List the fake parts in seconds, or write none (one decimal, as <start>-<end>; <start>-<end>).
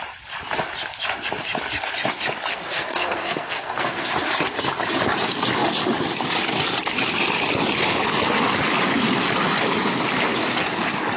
2.5-4.1